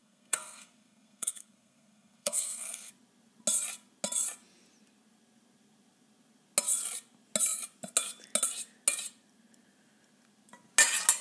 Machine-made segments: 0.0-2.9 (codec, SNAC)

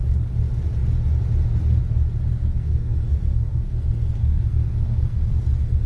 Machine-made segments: 2.3-5.9 (codec, SNAC)

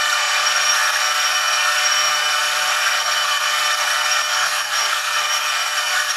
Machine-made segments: 0.0-6.2 (codec, SNAC)

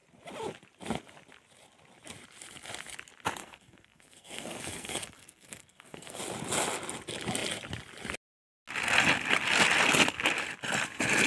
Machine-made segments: 3.4-6.2 (codec, SNAC)

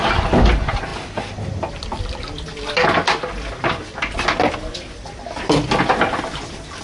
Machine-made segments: none

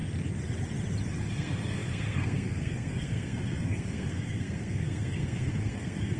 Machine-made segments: 1.3-6.2 (codec, SNAC)

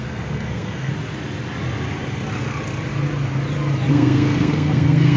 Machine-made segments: 0.0-0.9 (codec, SNAC); 3.9-5.2